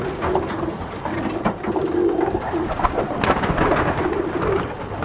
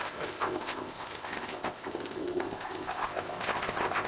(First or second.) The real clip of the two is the first